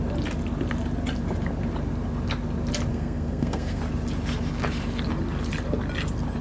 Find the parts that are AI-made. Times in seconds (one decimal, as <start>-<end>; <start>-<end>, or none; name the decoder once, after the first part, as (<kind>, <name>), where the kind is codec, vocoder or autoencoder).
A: 2.9-3.8 (codec, SNAC)